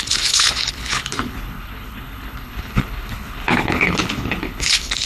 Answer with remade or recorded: remade